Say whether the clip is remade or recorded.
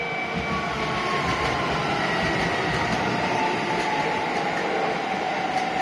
recorded